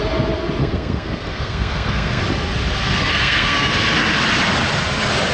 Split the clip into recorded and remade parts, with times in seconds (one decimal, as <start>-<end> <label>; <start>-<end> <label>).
0.0-0.6 recorded; 0.6-2.2 remade; 2.2-3.0 recorded; 3.0-3.7 remade; 3.7-5.3 recorded

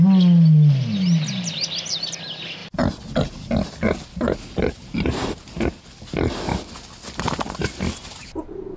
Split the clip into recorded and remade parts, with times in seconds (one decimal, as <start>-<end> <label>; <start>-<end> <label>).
0.0-8.8 recorded

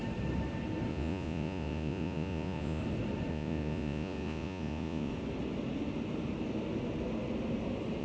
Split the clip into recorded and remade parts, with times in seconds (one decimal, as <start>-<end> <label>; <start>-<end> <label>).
0.0-0.9 recorded; 0.9-2.8 remade; 2.8-3.3 recorded; 3.3-5.1 remade; 5.1-8.0 recorded

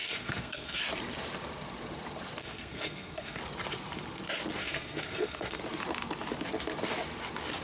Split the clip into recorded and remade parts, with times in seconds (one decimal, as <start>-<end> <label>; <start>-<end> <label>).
0.0-0.8 remade; 0.8-2.4 recorded; 2.4-3.4 remade; 3.4-4.6 recorded; 4.6-5.6 remade; 5.6-7.6 recorded